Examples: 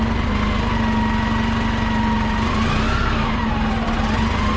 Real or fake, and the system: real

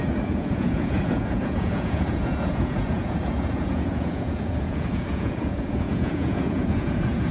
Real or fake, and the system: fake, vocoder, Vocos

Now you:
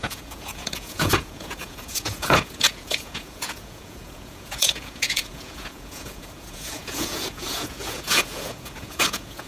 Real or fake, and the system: fake, vocoder, Vocos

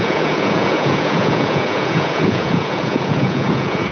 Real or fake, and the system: fake, vocoder, Vocos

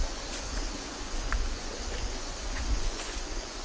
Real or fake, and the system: fake, vocoder, Vocos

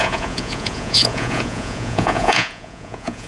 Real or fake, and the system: fake, vocoder, Vocos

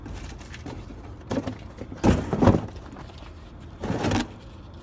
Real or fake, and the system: real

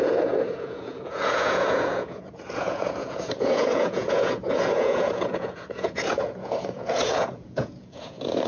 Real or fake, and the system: fake, vocoder, Vocos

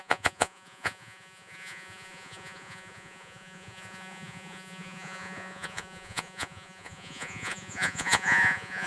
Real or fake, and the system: fake, vocoder, Vocos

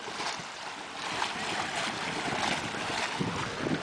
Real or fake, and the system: real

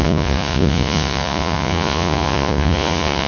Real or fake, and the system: fake, vocoder, Vocos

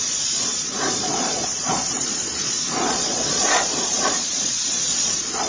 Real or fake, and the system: fake, vocoder, Vocos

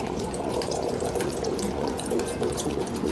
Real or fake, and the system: fake, vocoder, Vocos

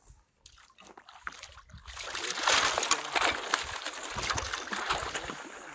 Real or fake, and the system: real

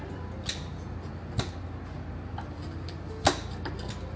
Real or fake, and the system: real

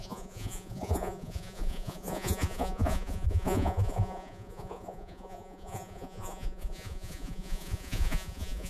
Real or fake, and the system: fake, vocoder, Vocos